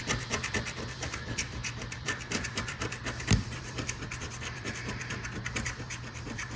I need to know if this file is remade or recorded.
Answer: remade